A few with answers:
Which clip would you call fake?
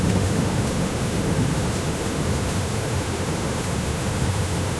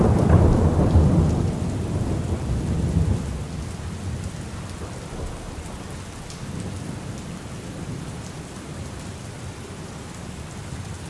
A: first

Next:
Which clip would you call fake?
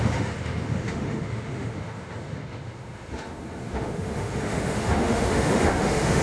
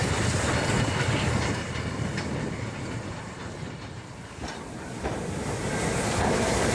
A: first